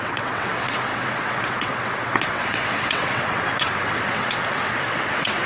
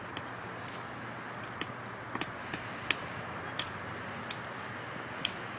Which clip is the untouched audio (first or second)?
second